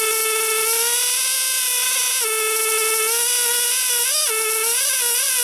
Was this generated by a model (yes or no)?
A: no